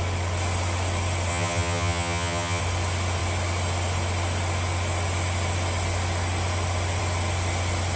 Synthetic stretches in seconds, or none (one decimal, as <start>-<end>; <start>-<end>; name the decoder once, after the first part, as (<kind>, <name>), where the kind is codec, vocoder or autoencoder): 1.3-2.6 (vocoder, HiFi-GAN)